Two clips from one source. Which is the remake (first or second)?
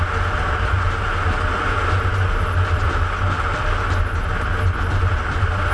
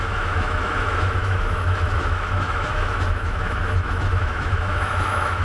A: second